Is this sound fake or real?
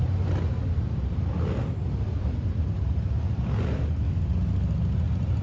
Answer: real